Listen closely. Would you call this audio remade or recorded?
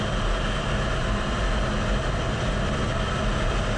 recorded